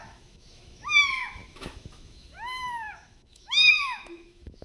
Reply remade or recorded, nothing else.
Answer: remade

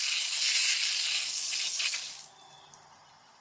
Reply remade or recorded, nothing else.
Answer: recorded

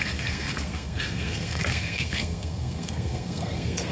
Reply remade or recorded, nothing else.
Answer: remade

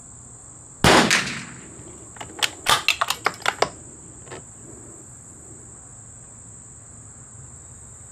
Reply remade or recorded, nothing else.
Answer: recorded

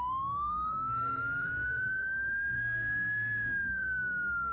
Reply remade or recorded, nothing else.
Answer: remade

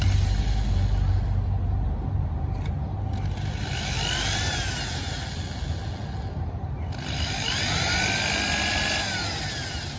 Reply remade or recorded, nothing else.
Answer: recorded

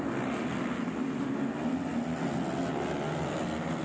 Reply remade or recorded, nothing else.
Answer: recorded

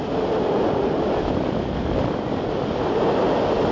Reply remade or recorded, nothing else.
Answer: recorded